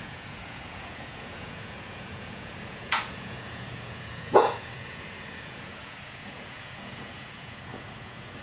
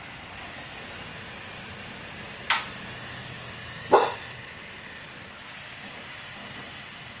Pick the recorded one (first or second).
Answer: second